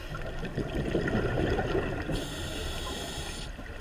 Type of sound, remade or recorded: recorded